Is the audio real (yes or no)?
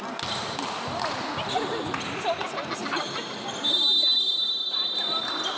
yes